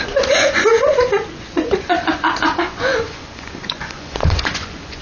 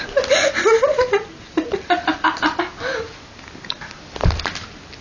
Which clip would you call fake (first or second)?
first